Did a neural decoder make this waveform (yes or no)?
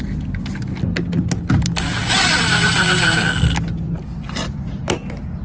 no